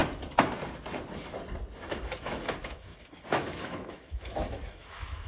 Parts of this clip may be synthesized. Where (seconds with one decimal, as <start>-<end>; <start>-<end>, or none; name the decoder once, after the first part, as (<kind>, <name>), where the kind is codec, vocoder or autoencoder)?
1.8-5.3 (autoencoder, DAC-VAE)